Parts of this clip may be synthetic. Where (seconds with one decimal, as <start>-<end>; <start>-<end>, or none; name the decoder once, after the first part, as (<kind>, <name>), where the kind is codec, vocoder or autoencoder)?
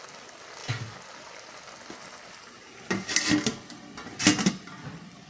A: none